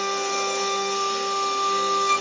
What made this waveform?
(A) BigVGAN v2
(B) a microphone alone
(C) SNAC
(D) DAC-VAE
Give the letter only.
C